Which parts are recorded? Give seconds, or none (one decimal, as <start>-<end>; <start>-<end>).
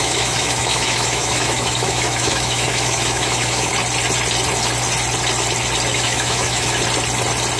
3.7-5.9; 6.8-7.6